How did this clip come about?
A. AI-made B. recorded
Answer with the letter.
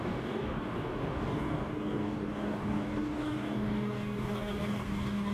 A